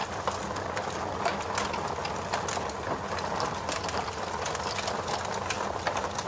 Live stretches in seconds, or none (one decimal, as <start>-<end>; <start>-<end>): 0.0-6.3